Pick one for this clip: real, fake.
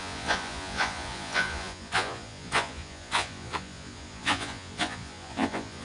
fake